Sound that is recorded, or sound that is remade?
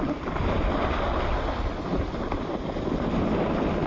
recorded